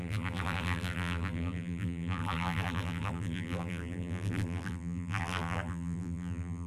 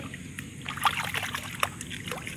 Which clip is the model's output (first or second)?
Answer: first